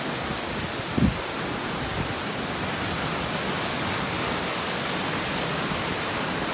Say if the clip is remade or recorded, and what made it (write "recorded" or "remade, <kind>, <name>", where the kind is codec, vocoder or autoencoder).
recorded